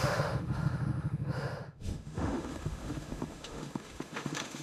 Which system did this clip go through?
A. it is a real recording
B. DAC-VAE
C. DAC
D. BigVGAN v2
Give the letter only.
B